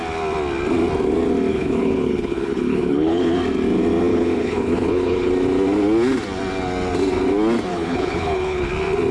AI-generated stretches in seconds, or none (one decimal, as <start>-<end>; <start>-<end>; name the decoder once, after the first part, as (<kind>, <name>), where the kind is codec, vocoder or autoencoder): 1.5-3.4 (codec, HILCodec); 4.1-5.3; 7.7-8.7

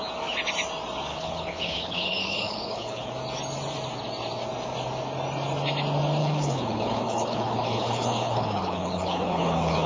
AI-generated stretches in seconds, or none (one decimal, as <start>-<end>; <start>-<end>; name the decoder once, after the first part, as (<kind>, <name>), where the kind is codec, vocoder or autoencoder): 1.1-3.1 (codec, HILCodec); 6.2-9.9

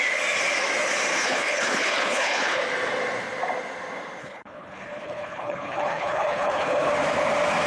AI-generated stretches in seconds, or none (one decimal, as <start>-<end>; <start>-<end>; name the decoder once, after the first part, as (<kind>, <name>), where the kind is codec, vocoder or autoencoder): 1.2-2.6 (codec, HILCodec); 4.2-6.9

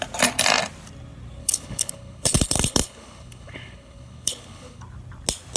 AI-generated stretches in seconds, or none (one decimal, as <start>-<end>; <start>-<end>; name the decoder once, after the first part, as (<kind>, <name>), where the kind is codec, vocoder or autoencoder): 1.4-4.8 (codec, HILCodec)

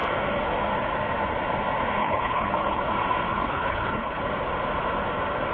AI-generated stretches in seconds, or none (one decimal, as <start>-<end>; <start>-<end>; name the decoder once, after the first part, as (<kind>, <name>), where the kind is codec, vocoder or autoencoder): 2.0-2.9 (codec, HILCodec); 3.3-4.2